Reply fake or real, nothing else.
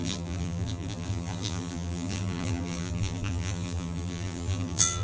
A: fake